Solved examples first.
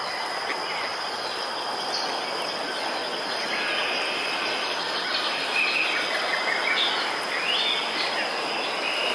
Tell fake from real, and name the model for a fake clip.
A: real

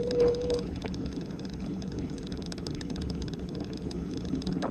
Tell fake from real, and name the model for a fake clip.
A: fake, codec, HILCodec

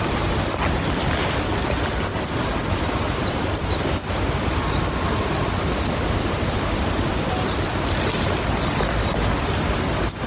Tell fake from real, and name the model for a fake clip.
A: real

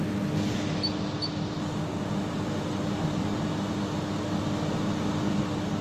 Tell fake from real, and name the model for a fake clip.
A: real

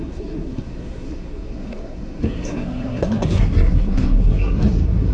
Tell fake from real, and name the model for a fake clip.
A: fake, codec, SNAC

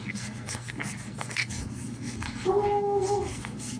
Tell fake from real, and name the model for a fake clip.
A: fake, codec, SNAC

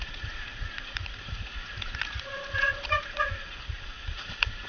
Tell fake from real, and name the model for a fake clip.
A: fake, vocoder, Vocos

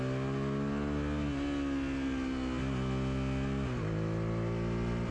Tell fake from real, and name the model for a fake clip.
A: real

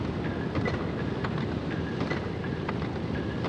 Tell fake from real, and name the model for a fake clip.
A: real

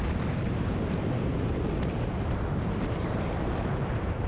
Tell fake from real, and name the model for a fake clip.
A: fake, vocoder, BigVGAN v2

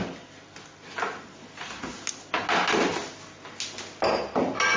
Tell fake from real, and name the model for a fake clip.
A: real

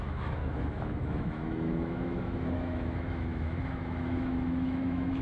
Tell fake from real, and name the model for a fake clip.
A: fake, autoencoder, DAC-VAE